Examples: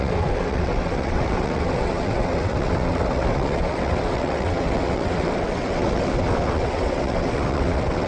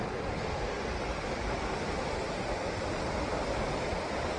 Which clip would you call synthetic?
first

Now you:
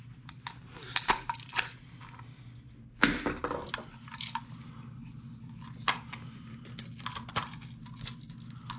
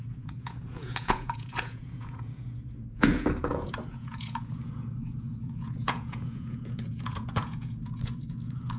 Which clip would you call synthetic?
second